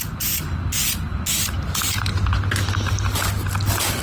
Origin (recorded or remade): recorded